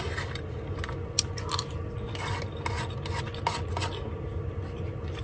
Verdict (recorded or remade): recorded